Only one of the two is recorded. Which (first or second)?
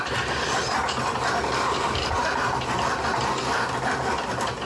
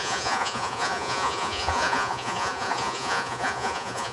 first